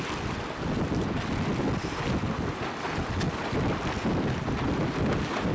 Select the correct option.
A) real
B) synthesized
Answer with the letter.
A